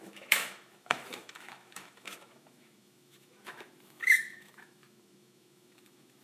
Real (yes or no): no